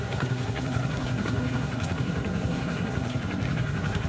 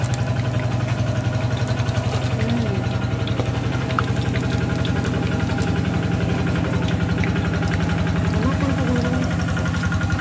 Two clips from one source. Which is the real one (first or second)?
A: second